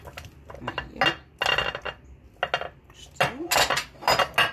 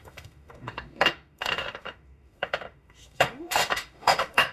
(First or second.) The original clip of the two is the first